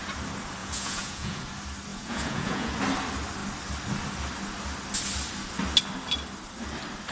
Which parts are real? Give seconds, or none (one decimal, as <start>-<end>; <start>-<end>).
0.0-0.6; 1.4-1.9; 2.7-7.1